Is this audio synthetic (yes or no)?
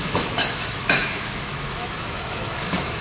yes